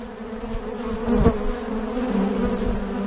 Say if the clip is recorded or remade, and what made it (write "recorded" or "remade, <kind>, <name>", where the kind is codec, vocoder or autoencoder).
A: recorded